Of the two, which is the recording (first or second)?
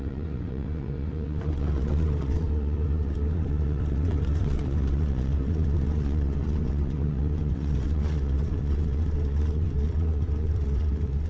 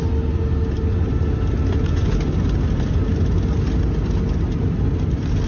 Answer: second